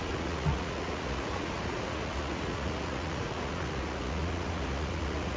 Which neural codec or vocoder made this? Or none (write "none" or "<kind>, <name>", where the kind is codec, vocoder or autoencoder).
vocoder, Vocos